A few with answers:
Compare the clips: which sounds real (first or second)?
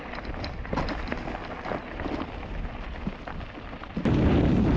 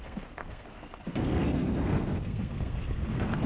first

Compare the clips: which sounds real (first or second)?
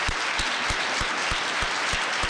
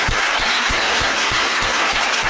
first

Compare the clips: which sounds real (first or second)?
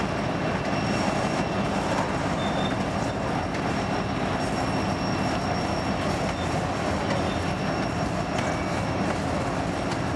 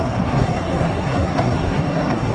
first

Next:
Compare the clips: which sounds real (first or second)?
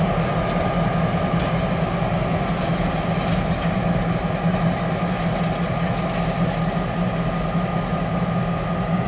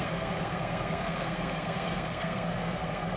first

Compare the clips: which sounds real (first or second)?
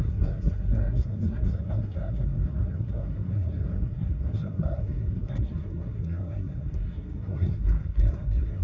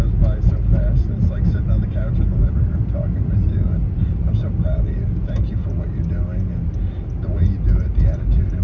second